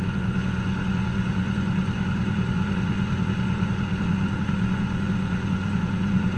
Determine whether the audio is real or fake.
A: fake